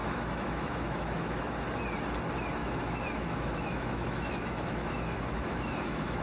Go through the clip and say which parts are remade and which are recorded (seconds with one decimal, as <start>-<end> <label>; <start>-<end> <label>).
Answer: 0.0-1.4 remade; 1.4-2.6 recorded; 2.6-6.2 remade